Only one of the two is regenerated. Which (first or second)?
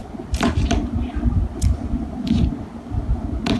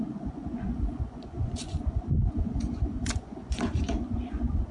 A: second